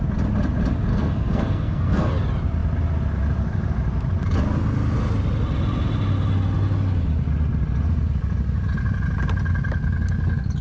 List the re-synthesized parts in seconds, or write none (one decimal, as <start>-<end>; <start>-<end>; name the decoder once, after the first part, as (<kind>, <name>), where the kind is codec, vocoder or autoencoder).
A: 0.9-2.1 (codec, SNAC)